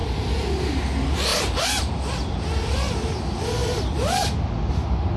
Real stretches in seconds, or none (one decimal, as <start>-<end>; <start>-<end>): 0.0-5.2